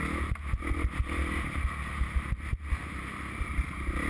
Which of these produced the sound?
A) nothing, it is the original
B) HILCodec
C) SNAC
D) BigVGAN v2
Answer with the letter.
A